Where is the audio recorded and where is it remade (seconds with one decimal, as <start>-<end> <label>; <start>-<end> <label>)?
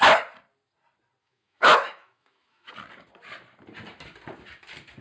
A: 0.0-1.2 recorded; 1.2-2.7 remade; 2.7-5.0 recorded